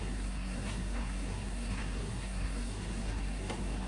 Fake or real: fake